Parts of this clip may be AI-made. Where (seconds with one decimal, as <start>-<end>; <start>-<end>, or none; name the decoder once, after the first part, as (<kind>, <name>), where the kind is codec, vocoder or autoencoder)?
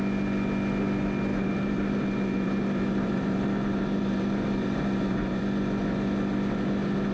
1.3-5.4 (vocoder, BigVGAN v2)